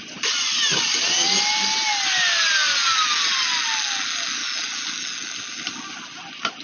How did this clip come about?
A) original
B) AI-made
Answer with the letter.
A